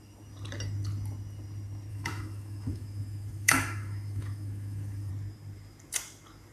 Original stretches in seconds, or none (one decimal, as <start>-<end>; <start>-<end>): 0.0-1.9; 5.1-6.5